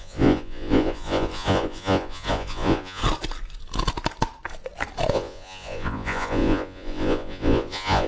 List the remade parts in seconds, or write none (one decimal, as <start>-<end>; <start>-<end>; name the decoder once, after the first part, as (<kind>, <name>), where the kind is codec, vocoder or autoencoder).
0.0-3.0 (vocoder, Vocos); 5.1-8.1